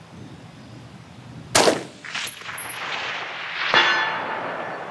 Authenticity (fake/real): real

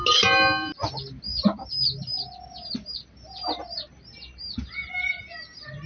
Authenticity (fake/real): real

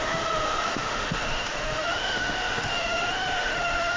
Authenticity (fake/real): fake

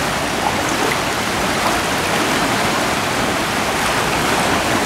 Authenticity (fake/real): real